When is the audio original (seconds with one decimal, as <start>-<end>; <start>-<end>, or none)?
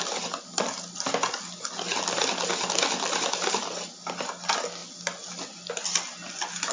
0.0-6.7